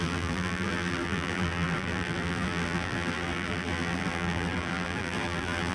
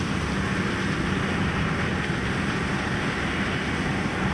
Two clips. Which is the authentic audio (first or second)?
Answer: second